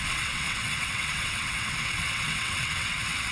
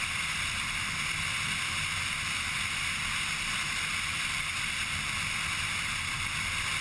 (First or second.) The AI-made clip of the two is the first